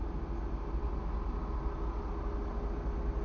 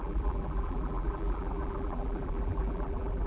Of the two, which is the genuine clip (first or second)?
first